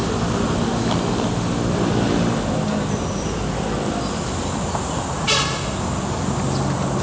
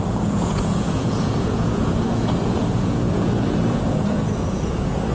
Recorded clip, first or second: first